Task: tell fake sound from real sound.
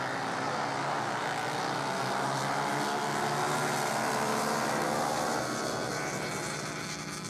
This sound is real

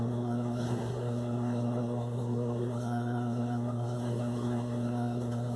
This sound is fake